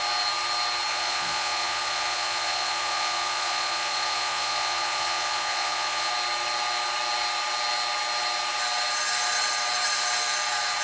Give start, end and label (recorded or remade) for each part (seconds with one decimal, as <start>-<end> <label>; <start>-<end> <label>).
0.0-0.9 recorded; 0.9-6.1 remade; 6.1-10.8 recorded